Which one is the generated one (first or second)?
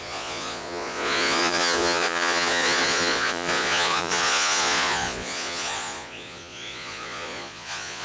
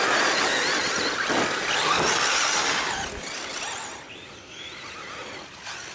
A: first